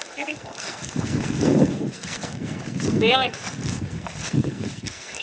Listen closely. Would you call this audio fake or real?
fake